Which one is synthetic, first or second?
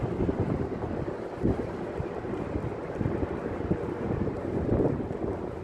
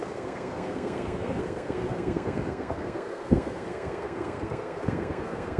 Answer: second